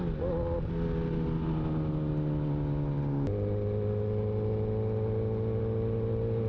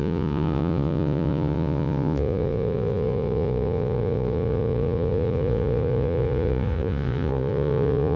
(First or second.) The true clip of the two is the first